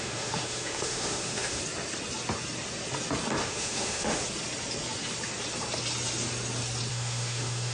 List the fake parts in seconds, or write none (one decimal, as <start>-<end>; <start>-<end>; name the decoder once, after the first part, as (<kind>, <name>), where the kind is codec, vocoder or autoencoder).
0.0-1.6 (autoencoder, DAC-VAE); 3.4-4.2; 6.9-7.7